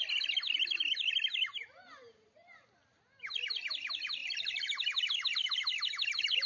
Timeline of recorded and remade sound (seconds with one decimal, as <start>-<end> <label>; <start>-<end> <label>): 0.0-6.5 recorded